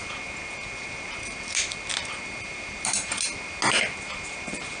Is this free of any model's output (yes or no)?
yes